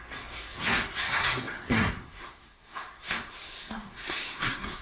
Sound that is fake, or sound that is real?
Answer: fake